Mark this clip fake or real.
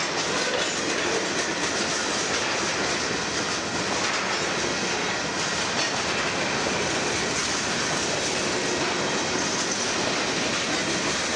real